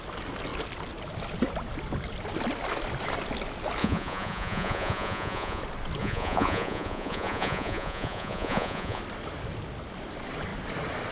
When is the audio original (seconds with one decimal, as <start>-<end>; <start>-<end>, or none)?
0.0-3.8; 5.6-6.0; 9.0-11.1